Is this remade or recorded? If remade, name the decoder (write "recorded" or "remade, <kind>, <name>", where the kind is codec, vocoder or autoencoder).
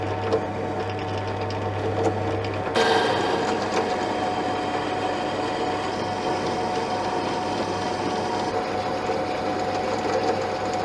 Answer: recorded